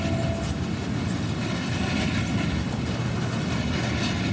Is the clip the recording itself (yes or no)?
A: yes